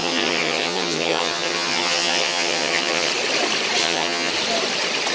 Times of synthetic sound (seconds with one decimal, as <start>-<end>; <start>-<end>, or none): 0.0-3.1; 3.8-4.3